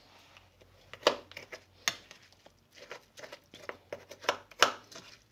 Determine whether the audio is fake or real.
real